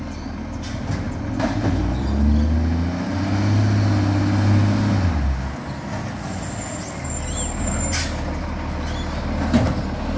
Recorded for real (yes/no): yes